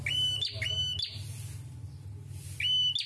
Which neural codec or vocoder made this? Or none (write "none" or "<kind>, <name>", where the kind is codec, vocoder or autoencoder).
none